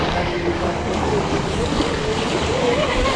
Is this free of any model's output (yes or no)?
no